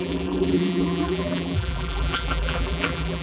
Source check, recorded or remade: remade